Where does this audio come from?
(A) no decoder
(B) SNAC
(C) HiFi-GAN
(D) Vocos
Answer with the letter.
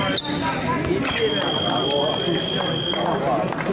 A